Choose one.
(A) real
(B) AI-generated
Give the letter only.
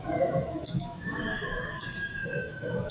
B